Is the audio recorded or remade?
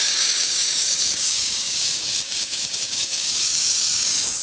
remade